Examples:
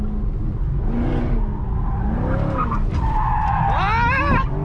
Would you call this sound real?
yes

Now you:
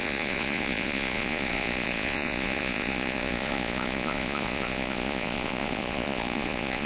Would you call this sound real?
no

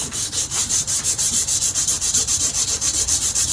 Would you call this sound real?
no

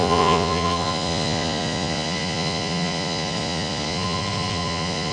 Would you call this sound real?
no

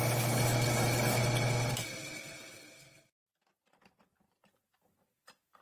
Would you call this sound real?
yes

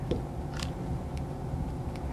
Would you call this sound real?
no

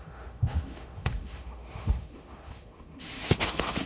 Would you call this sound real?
no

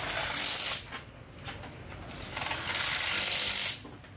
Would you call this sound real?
yes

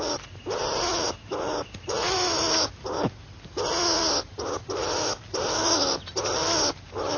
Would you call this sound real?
yes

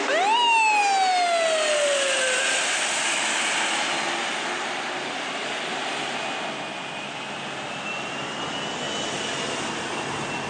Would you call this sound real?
yes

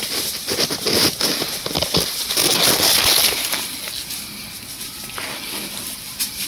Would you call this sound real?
yes